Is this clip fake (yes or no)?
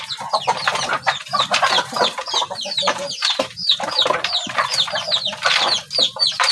yes